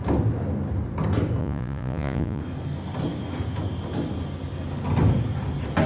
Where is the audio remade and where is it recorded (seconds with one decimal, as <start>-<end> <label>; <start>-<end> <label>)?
0.0-1.4 recorded; 1.4-2.4 remade; 2.4-5.9 recorded